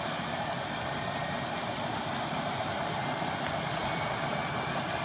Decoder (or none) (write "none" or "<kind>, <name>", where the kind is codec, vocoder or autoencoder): none